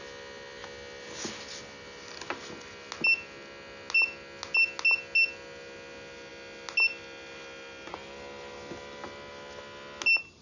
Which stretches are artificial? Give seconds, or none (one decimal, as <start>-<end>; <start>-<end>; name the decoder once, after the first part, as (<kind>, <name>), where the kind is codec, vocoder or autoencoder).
none